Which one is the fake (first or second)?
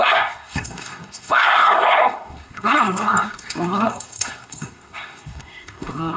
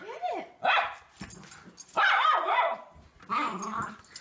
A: first